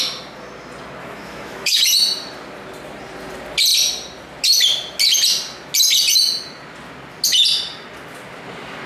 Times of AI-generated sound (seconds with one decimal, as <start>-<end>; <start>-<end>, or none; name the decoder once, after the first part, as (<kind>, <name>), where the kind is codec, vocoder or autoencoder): 1.0-1.8 (autoencoder, DAC-VAE)